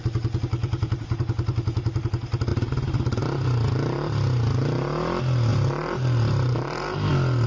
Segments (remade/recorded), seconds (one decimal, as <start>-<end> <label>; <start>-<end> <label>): 0.0-0.6 recorded; 0.6-2.1 remade; 2.1-2.5 recorded; 2.5-3.2 remade; 3.2-5.5 recorded; 5.5-7.1 remade; 7.1-7.5 recorded